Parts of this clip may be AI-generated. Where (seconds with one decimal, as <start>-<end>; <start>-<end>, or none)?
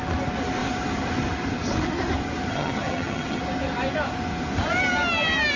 2.5-3.4